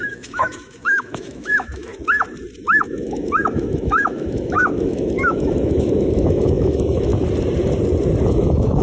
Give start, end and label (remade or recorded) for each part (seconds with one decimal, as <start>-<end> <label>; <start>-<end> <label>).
0.0-1.9 remade; 1.9-2.6 recorded; 2.6-7.1 remade; 7.1-8.3 recorded; 8.3-8.8 remade